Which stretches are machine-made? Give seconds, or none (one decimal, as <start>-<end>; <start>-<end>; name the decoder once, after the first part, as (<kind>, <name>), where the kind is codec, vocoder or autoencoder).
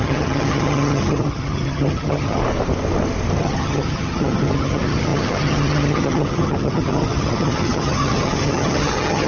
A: 0.0-2.4 (vocoder, HiFi-GAN); 3.4-9.3